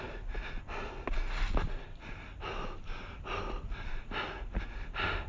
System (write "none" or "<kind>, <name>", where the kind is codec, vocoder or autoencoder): none